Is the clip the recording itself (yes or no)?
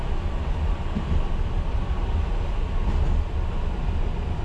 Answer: yes